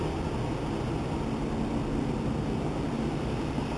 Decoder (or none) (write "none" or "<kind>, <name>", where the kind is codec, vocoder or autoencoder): none